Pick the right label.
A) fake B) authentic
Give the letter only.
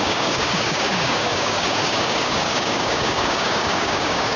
A